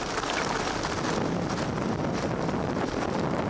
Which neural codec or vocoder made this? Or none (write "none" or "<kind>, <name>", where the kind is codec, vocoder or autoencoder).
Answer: none